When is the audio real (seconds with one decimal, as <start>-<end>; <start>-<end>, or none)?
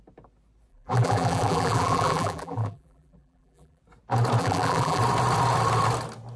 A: 0.0-0.7; 3.8-4.4; 5.0-6.4